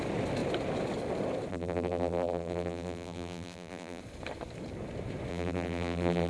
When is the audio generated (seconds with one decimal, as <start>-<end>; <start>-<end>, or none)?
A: 1.5-4.0; 5.3-6.3